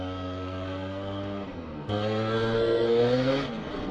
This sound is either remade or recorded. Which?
remade